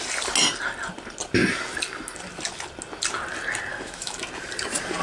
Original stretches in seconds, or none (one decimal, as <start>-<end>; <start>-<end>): 0.0-3.7; 4.2-5.0